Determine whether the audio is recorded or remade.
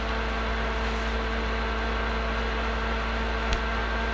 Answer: recorded